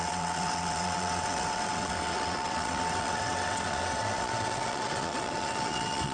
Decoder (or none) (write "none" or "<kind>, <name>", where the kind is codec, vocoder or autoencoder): vocoder, WaveNeXt